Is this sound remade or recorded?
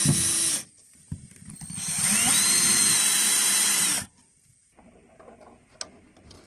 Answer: recorded